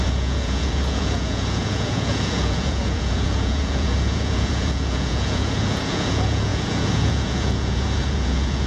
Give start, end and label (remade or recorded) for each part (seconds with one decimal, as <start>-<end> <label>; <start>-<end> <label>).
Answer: 0.0-8.7 remade